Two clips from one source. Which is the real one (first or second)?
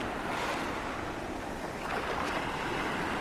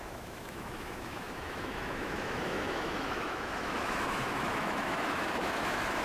first